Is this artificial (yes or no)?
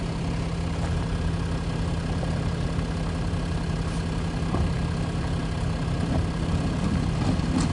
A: no